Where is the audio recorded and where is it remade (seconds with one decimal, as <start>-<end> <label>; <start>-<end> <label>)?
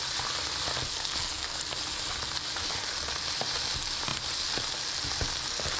0.0-0.9 recorded; 0.9-1.6 remade; 1.6-5.8 recorded